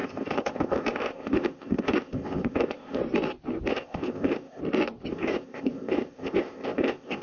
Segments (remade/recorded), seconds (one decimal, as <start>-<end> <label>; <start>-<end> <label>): 0.0-3.0 remade; 3.0-3.7 recorded; 3.7-4.6 remade; 4.6-5.1 recorded; 5.1-7.2 remade

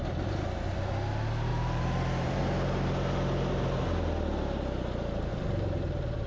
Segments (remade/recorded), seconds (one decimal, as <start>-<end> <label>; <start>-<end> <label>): 0.0-1.5 recorded; 1.5-2.4 remade; 2.4-5.3 recorded; 5.3-6.3 remade

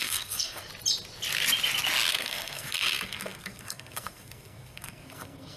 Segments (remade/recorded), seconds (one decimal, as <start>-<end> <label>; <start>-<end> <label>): 0.0-0.7 remade; 0.7-2.1 recorded; 2.1-5.6 remade

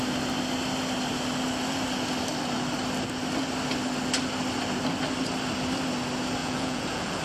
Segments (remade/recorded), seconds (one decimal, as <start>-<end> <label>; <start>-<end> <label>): 0.0-6.4 recorded; 6.4-7.2 remade

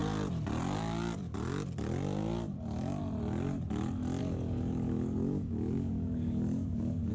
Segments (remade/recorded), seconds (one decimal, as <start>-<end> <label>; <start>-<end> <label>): 0.0-4.2 recorded; 4.2-7.1 remade

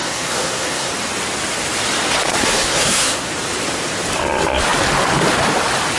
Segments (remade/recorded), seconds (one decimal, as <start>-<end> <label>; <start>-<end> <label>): 0.0-0.9 remade; 0.9-2.3 recorded; 2.3-3.3 remade; 3.3-6.0 recorded

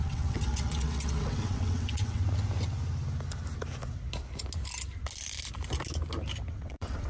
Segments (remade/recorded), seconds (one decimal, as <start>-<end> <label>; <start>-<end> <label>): 0.0-2.2 remade; 2.2-6.5 recorded; 6.5-7.1 remade